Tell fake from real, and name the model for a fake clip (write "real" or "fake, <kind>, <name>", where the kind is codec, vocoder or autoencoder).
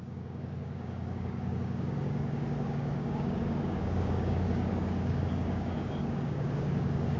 fake, codec, DAC